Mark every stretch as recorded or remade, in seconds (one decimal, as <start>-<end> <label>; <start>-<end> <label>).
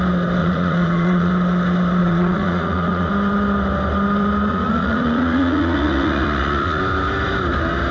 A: 0.0-0.4 recorded; 0.4-1.3 remade; 1.3-2.0 recorded; 2.0-3.1 remade; 3.1-4.5 recorded; 4.5-6.8 remade; 6.8-7.9 recorded